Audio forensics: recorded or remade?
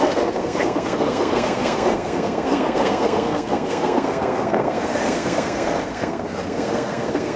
remade